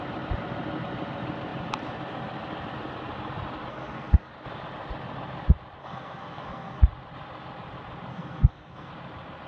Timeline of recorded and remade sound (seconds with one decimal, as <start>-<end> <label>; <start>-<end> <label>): 0.0-3.7 recorded; 3.7-4.3 remade; 4.3-5.8 recorded; 5.8-6.8 remade; 6.8-8.1 recorded; 8.1-8.9 remade; 8.9-9.5 recorded